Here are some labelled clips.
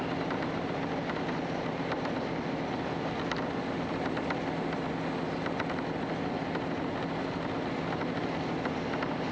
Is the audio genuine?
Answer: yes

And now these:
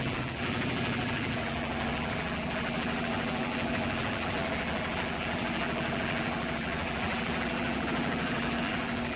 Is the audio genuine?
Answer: no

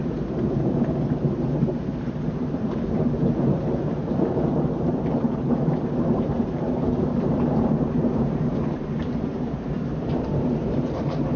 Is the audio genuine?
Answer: no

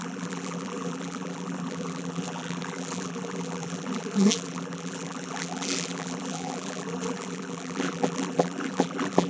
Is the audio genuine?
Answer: no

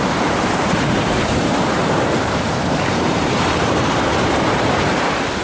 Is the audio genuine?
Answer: no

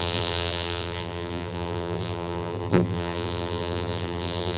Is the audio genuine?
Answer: no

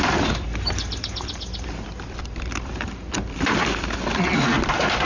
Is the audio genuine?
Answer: no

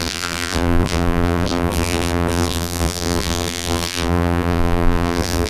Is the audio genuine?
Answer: no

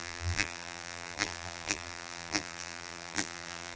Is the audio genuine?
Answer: no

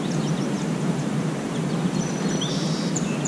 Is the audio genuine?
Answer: no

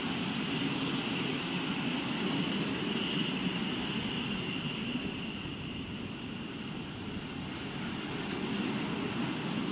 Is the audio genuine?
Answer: yes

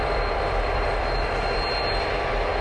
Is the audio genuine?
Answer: no